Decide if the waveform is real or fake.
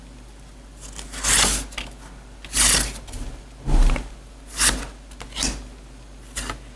real